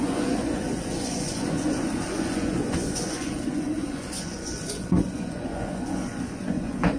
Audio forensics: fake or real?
fake